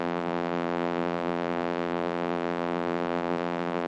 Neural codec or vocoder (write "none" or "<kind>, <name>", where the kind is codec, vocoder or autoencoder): vocoder, BigVGAN v2